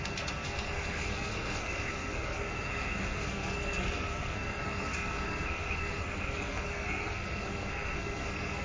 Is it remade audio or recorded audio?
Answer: remade